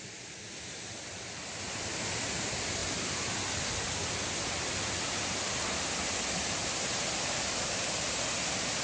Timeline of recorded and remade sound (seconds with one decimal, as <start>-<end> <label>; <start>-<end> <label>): 0.0-8.8 recorded